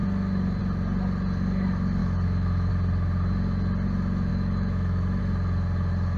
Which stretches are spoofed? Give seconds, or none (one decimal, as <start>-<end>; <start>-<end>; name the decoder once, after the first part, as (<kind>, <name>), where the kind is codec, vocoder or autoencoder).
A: 2.0-2.7 (autoencoder, DAC-VAE); 4.3-5.2